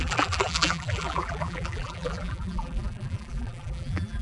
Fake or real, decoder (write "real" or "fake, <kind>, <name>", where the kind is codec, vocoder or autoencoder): fake, vocoder, BigVGAN v2